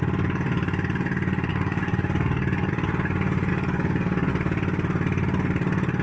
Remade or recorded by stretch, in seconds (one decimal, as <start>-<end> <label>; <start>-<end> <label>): 0.0-1.5 recorded; 1.5-2.7 remade; 2.7-3.5 recorded; 3.5-4.3 remade; 4.3-6.0 recorded